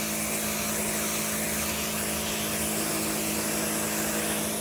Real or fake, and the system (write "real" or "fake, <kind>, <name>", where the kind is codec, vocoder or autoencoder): real